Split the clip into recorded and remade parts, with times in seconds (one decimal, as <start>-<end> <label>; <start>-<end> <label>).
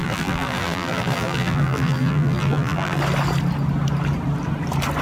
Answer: 0.0-3.0 remade; 3.0-5.0 recorded